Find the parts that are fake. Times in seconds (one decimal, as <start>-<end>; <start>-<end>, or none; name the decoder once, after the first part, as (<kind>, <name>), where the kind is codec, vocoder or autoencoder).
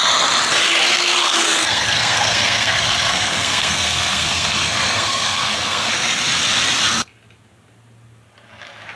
0.9-5.9 (codec, SNAC)